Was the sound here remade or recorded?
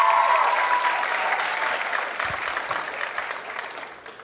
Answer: recorded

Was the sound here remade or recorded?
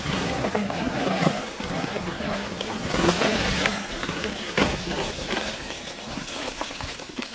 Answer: remade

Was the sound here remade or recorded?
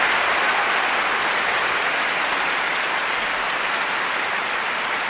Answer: recorded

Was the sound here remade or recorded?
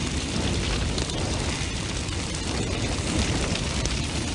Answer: recorded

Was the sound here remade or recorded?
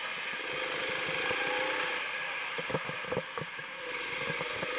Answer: recorded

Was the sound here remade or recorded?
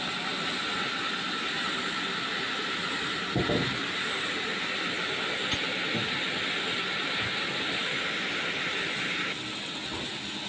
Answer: recorded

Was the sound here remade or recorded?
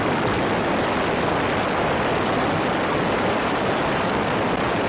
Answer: recorded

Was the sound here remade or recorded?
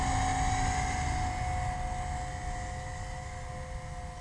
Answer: recorded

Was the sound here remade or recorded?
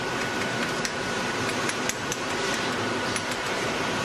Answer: remade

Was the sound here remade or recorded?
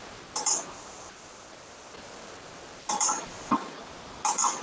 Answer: recorded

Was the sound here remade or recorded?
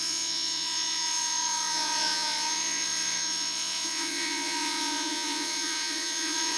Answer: remade